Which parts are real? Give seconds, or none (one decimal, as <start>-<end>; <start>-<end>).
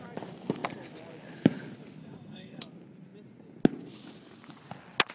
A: 0.0-2.0; 2.6-5.1